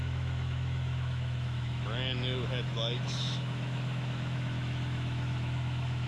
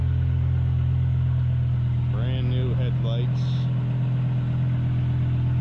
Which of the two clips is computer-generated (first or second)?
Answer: first